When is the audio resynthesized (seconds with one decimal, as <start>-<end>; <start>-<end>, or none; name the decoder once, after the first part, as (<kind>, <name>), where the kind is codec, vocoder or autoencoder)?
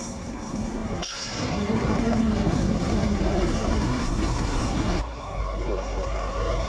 0.0-6.7 (codec, SNAC)